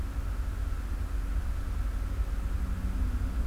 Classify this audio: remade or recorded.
recorded